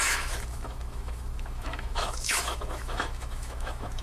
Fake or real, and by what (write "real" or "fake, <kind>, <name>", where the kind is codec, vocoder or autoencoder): fake, autoencoder, DAC-VAE